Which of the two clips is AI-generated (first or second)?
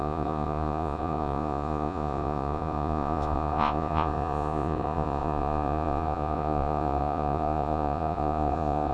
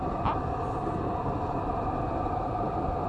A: first